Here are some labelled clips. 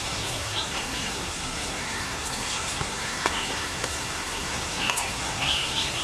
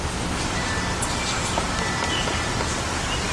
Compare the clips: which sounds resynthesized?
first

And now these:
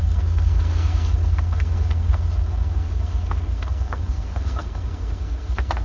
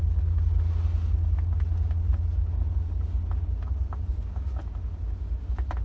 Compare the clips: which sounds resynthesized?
first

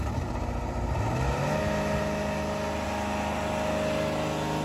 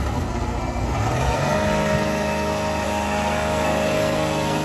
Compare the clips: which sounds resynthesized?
second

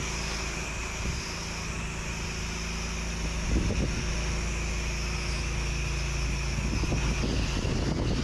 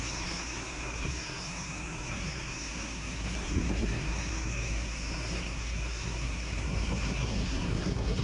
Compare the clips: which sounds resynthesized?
second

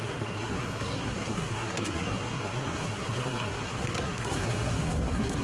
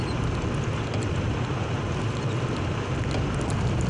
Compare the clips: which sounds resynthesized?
first